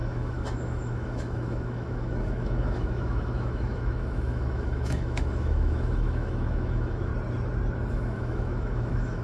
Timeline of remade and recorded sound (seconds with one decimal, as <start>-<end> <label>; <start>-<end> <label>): 0.0-7.1 remade; 7.1-7.9 recorded; 7.9-9.2 remade